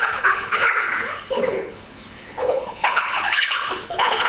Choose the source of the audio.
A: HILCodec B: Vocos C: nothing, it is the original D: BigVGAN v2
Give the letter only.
A